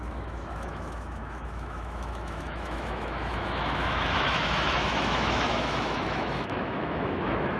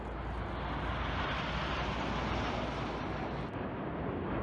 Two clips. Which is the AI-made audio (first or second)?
first